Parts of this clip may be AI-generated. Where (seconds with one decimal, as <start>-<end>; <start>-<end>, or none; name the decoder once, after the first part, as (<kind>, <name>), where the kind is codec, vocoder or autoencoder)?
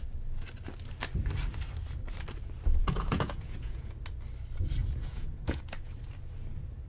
2.8-4.0 (vocoder, Vocos); 4.8-5.6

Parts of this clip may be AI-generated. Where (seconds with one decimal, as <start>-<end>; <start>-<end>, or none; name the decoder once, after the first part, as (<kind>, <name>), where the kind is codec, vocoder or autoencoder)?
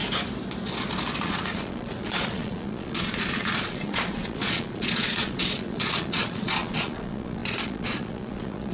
1.1-8.7 (vocoder, Vocos)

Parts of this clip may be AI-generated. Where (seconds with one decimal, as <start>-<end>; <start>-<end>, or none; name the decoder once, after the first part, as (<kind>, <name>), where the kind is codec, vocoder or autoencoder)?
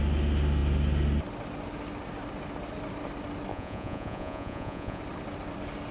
3.5-5.0 (vocoder, Vocos)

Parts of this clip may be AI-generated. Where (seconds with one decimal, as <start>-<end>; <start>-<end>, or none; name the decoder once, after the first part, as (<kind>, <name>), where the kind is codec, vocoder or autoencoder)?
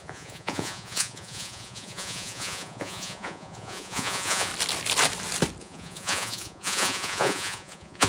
0.0-4.5 (vocoder, Vocos); 5.6-8.1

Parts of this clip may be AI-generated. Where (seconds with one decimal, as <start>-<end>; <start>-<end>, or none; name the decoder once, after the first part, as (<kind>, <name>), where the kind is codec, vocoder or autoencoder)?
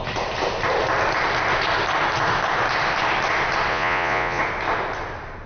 3.7-4.4 (vocoder, Vocos)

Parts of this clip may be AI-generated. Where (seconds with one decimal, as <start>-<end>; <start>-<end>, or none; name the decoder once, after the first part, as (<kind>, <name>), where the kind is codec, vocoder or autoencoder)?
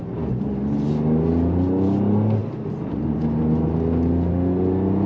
none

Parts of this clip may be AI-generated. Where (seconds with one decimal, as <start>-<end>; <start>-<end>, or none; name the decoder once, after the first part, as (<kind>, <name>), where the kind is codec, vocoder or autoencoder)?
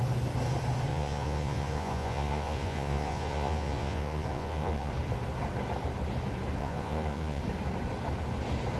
0.9-4.9 (vocoder, Vocos); 6.6-7.4